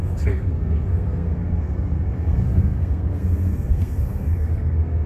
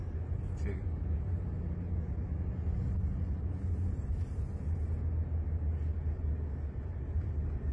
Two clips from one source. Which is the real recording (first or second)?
second